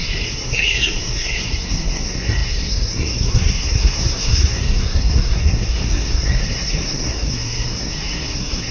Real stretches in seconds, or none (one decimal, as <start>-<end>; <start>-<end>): none